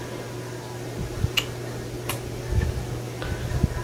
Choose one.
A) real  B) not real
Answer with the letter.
A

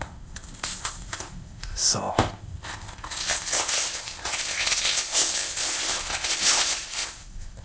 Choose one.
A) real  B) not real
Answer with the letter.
B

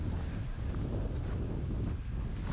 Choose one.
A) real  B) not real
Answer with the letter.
A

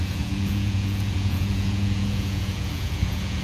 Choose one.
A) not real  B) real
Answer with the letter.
A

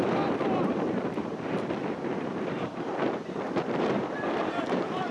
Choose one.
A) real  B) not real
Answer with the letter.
B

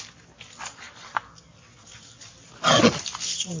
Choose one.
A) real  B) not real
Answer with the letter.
A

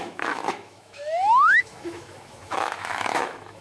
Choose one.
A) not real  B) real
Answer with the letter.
A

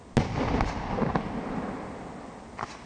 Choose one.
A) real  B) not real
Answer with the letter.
A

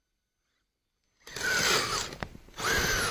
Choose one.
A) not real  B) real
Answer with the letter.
A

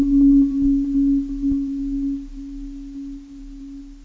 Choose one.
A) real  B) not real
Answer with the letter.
A